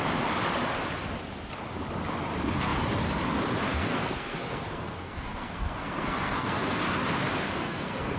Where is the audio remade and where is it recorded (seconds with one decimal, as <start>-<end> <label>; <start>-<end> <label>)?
0.0-3.7 recorded; 3.7-6.8 remade; 6.8-7.6 recorded; 7.6-8.2 remade